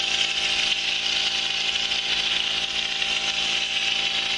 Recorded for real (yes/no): yes